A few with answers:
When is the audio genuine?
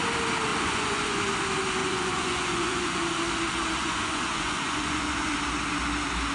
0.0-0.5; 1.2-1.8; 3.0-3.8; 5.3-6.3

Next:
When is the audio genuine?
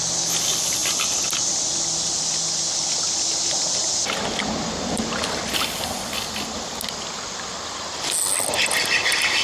0.0-9.4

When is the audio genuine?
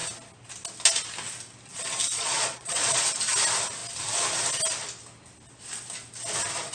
0.0-2.1; 3.0-6.7